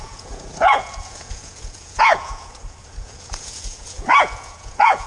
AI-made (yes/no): yes